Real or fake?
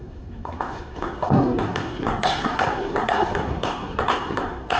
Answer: fake